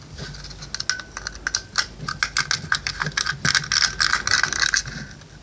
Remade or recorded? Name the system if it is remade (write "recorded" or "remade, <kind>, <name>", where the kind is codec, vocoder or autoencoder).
recorded